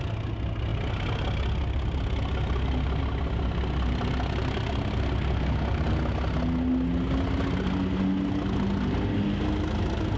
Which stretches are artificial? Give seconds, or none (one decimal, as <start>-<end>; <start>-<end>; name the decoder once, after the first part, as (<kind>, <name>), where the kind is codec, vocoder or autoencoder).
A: none